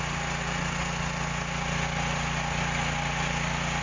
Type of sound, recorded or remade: recorded